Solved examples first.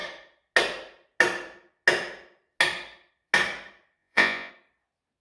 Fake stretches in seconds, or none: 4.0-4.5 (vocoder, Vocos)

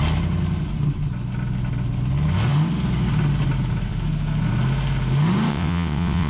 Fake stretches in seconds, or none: 5.5-6.3 (vocoder, WaveNeXt)

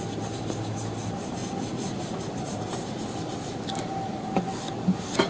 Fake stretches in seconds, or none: none

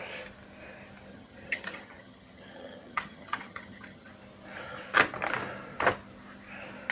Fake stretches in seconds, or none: 1.1-4.1 (vocoder, HiFi-GAN)

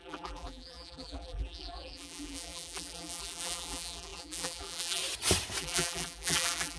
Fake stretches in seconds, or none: 0.0-5.0 (vocoder, BigVGAN v2); 5.6-6.8